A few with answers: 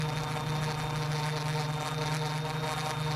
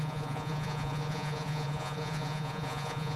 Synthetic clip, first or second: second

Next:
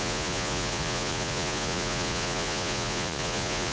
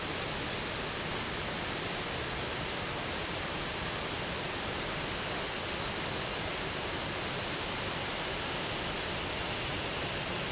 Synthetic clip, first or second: first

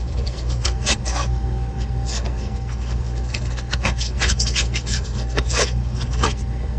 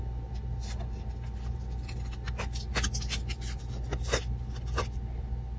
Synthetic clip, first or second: first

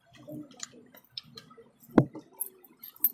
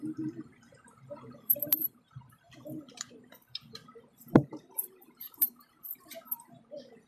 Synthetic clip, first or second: second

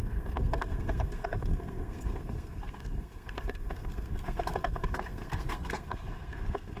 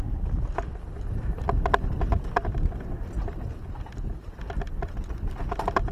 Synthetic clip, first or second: first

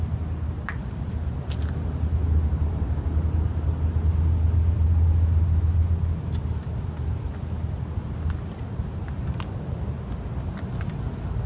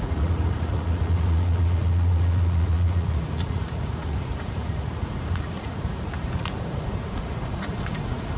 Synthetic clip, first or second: second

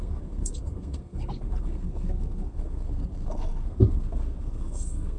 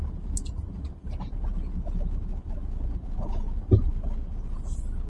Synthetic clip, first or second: first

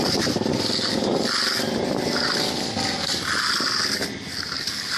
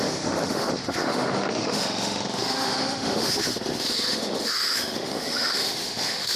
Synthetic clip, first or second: second